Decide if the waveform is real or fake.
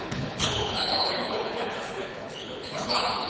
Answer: fake